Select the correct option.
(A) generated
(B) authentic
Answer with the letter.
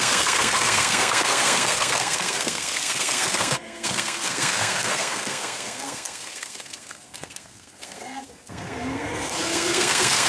A